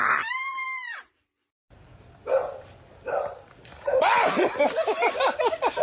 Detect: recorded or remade remade